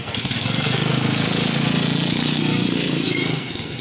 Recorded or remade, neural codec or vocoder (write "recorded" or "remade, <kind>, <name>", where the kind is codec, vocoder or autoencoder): remade, codec, SNAC